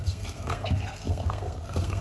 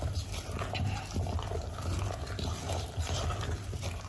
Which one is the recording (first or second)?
second